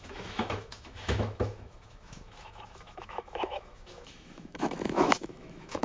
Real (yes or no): no